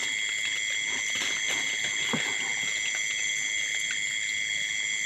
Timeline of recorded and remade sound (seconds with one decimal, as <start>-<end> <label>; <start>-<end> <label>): 0.0-5.1 recorded